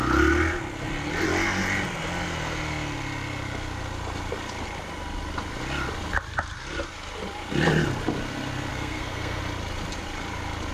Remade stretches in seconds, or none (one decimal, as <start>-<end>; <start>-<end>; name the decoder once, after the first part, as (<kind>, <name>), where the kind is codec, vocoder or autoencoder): 8.7-9.4 (codec, SNAC)

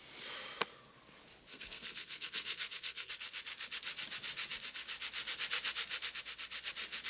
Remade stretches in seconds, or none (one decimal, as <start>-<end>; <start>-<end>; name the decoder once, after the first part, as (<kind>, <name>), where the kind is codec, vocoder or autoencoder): 1.5-3.1 (codec, SNAC)